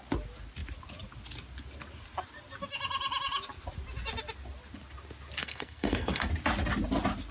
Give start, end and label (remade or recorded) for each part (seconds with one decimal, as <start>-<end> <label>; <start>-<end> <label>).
0.0-5.4 recorded; 5.4-6.3 remade; 6.3-7.3 recorded